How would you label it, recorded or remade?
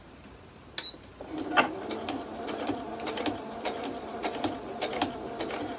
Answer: recorded